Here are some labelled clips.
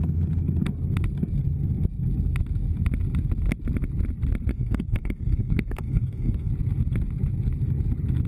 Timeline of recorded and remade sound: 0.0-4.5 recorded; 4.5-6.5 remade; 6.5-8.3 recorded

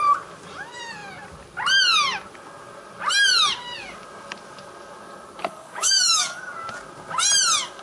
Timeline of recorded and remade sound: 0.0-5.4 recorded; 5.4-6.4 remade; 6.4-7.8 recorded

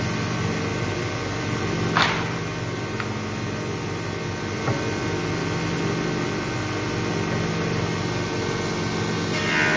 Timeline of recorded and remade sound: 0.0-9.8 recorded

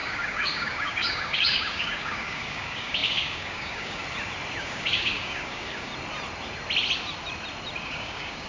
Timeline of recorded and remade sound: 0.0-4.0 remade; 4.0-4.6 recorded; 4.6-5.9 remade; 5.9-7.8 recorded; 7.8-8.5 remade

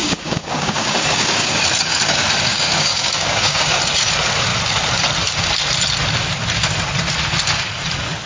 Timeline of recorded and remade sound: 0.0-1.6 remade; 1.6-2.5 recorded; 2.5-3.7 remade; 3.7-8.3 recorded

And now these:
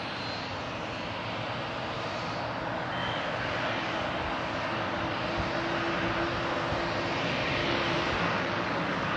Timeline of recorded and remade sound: 0.0-3.0 recorded; 3.0-5.1 remade; 5.1-7.6 recorded; 7.6-9.2 remade

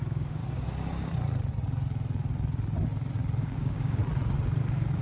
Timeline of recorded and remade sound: 0.0-0.4 remade; 0.4-3.4 recorded; 3.4-4.0 remade; 4.0-4.6 recorded; 4.6-5.0 remade